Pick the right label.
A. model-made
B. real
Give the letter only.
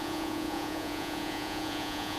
A